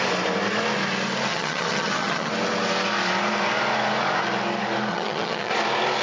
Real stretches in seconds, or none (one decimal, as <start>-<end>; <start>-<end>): 0.0-1.3; 2.3-4.9; 5.5-6.0